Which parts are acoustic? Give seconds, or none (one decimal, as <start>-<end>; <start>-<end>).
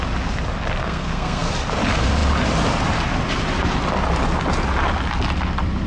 0.0-0.8; 1.5-5.9